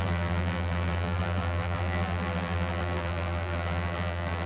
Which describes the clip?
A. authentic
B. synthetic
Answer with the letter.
B